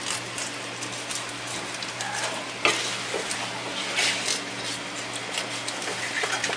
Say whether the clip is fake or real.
real